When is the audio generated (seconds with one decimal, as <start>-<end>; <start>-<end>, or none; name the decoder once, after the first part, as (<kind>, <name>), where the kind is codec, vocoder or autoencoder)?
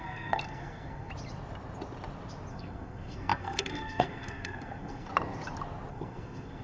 0.0-1.1 (codec, SNAC); 2.5-5.1; 5.9-6.6